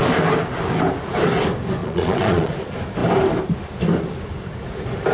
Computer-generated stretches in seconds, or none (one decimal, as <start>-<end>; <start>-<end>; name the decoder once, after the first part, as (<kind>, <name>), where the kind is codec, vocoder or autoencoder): 1.8-2.5 (vocoder, Vocos)